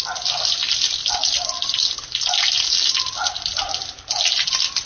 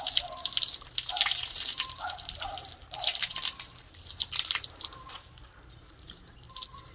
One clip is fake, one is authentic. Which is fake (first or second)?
second